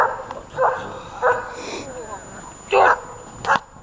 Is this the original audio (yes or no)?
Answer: yes